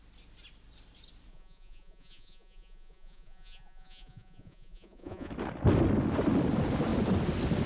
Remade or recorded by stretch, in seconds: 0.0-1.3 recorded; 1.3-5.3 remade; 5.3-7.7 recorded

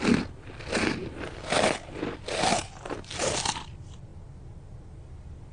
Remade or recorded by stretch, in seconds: 0.0-2.5 recorded; 2.5-3.4 remade; 3.4-5.5 recorded

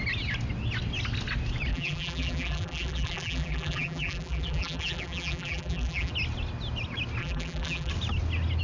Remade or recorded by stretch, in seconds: 0.0-1.7 recorded; 1.7-6.1 remade; 6.1-7.2 recorded; 7.2-7.9 remade; 7.9-8.6 recorded

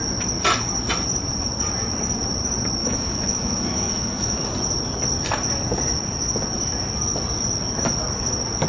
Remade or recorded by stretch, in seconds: 0.0-2.8 recorded; 2.8-4.5 remade; 4.5-8.7 recorded

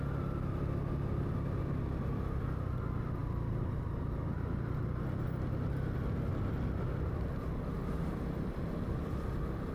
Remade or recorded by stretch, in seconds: 0.0-9.7 recorded

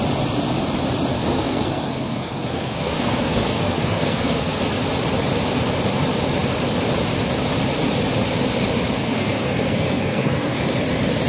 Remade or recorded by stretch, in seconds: 0.0-1.1 recorded; 1.1-4.6 remade; 4.6-9.0 recorded; 9.0-10.8 remade; 10.8-11.3 recorded

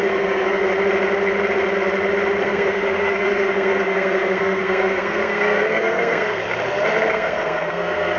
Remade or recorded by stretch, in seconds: 0.0-0.6 remade; 0.6-2.4 recorded; 2.4-6.4 remade; 6.4-7.1 recorded; 7.1-8.2 remade

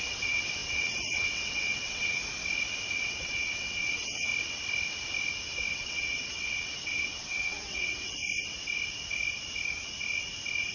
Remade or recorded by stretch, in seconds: 0.0-2.2 remade; 2.2-2.9 recorded; 2.9-4.3 remade; 4.3-5.7 recorded; 5.7-8.2 remade; 8.2-10.7 recorded